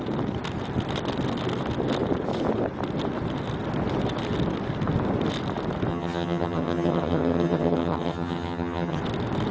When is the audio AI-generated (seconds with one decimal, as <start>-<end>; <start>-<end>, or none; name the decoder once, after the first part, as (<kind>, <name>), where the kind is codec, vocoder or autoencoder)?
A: 5.9-9.0 (vocoder, HiFi-GAN)